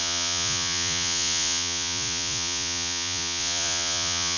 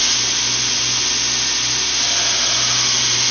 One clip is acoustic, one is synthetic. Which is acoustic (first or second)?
second